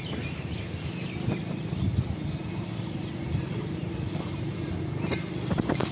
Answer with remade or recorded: remade